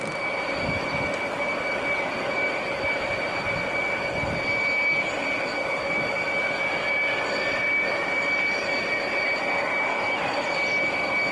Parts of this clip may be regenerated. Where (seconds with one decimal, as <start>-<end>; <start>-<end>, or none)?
9.9-10.5